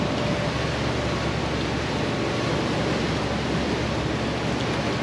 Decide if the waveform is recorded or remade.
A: recorded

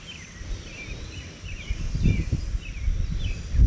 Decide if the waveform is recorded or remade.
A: recorded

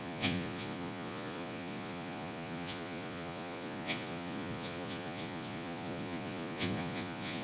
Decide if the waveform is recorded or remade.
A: remade